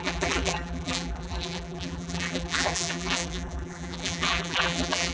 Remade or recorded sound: remade